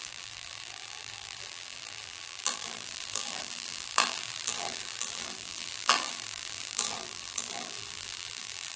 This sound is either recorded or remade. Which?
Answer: remade